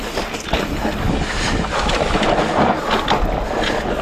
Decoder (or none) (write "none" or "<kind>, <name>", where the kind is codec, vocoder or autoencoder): none